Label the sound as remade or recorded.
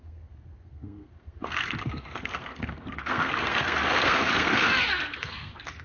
remade